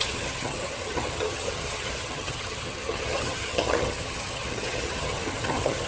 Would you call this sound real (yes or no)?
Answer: no